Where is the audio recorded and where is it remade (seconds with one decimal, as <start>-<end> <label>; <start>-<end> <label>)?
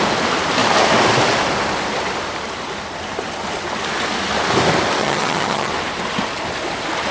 0.0-5.0 recorded; 5.0-5.7 remade; 5.7-7.1 recorded